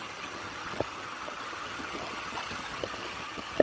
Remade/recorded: remade